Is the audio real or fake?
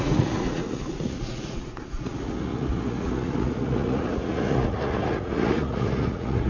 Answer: fake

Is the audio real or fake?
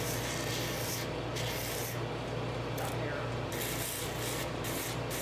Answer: real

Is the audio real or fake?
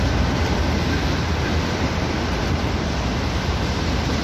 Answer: real